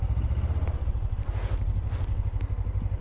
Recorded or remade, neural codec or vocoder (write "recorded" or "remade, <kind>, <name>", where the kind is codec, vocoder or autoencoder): recorded